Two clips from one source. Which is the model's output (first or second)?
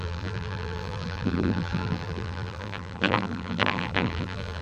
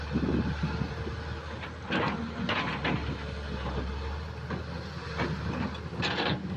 first